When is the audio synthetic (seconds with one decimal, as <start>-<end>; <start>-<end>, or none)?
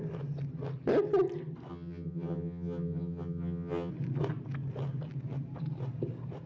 1.7-3.9